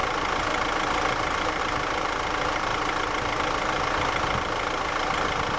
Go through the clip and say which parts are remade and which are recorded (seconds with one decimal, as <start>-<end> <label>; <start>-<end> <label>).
0.0-5.6 recorded